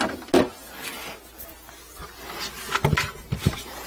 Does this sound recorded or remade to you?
recorded